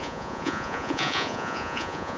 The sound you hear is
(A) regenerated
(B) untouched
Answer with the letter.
A